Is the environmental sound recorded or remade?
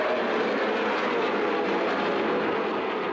recorded